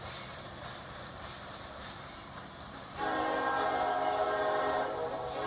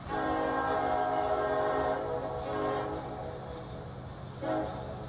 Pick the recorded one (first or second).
second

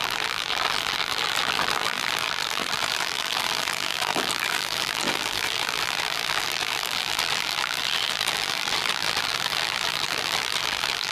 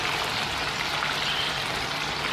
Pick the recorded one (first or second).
second